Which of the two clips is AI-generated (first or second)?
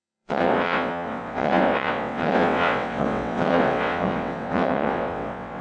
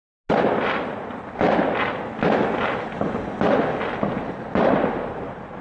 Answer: first